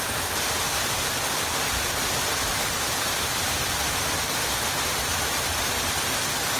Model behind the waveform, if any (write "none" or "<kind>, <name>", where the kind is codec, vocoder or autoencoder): none